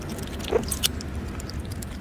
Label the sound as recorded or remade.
recorded